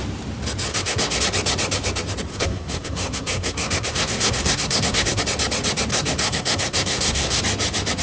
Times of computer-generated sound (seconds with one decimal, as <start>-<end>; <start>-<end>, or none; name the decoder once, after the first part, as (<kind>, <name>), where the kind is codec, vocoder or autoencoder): 0.7-1.2 (codec, SNAC); 2.3-5.2; 5.9-7.4